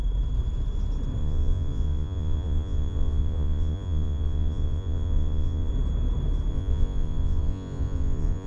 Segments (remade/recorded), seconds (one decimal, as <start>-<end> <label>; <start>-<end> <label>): 0.0-1.2 recorded; 1.2-5.7 remade; 5.7-6.5 recorded; 6.5-8.5 remade